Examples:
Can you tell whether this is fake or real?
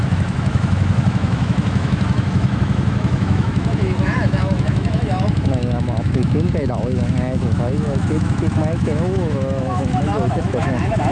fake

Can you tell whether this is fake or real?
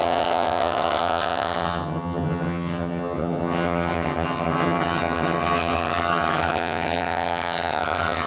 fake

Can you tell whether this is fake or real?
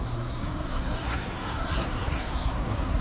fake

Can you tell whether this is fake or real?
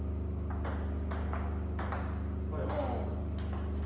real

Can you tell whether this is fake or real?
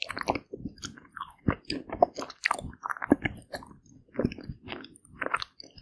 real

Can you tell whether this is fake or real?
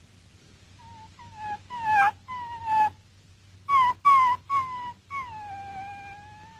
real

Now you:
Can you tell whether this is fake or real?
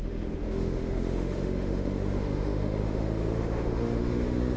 fake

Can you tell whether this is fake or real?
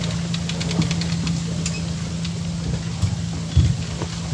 real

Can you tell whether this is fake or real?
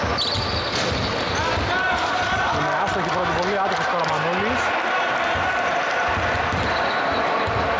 real